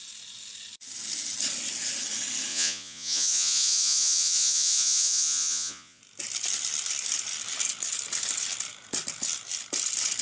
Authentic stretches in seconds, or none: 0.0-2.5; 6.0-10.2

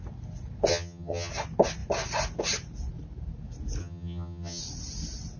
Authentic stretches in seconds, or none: 0.0-0.7; 1.3-3.8; 4.6-5.4

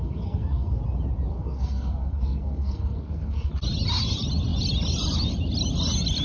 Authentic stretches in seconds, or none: 0.8-1.3; 3.5-6.2

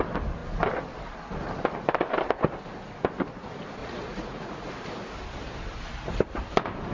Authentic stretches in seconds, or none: 0.0-3.8; 4.7-6.9

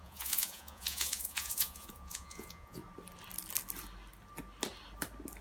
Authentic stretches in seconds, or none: 2.8-5.4

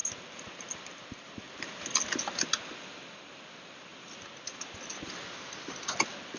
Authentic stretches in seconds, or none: 0.0-6.4